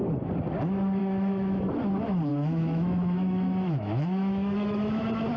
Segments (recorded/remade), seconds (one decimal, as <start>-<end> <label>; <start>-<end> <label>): 0.0-1.0 recorded; 1.0-1.6 remade; 1.6-2.3 recorded; 2.3-5.0 remade; 5.0-5.4 recorded